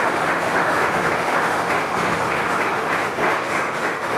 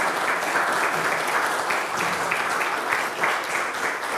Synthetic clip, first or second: first